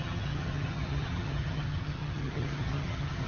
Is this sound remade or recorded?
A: remade